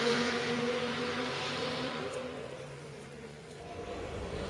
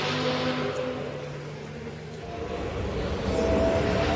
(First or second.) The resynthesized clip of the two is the first